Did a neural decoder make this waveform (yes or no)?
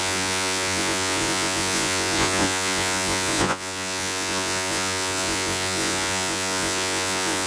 yes